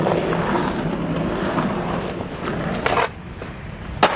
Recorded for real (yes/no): yes